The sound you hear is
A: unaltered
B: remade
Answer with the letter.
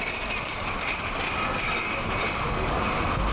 A